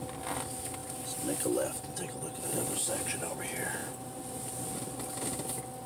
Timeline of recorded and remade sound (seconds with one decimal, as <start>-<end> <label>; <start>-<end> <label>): 0.0-5.9 recorded